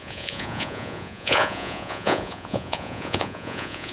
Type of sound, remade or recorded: remade